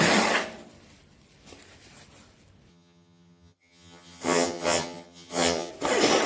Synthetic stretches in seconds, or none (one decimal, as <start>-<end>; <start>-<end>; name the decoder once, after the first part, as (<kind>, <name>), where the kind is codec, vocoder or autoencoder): 2.7-5.7 (vocoder, HiFi-GAN)